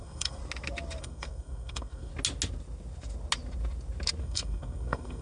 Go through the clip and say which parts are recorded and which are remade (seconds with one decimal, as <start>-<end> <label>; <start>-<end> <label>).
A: 0.0-0.4 remade; 0.4-1.0 recorded; 1.0-2.1 remade; 2.1-4.2 recorded; 4.2-5.2 remade